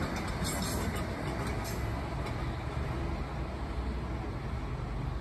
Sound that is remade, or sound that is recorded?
recorded